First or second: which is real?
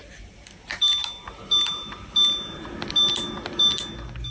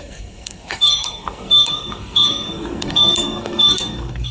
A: first